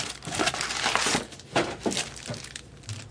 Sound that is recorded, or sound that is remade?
recorded